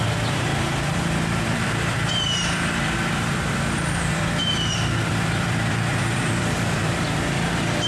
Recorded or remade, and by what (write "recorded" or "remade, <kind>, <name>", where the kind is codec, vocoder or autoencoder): remade, vocoder, BigVGAN v2